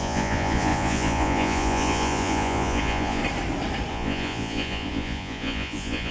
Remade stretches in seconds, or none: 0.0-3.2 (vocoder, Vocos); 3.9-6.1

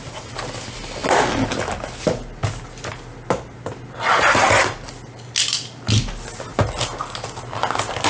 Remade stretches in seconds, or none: none

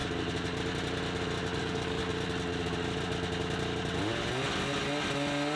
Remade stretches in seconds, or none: 1.6-2.0 (codec, DAC)

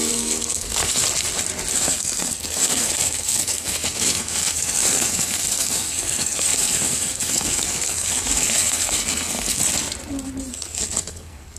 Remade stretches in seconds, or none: 0.0-1.0 (codec, SNAC); 1.7-9.6; 10.5-11.6

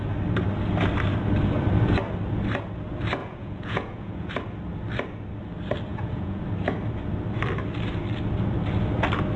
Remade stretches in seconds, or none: 3.2-4.3 (vocoder, Vocos); 5.9-6.4

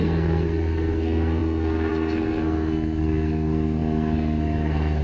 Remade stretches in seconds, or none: 0.0-5.0 (codec, SNAC)

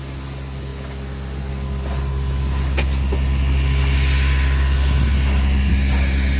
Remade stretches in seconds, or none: none